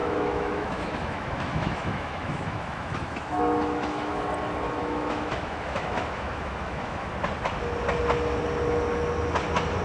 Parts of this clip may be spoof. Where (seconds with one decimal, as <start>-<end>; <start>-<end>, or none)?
0.0-4.2; 4.8-7.1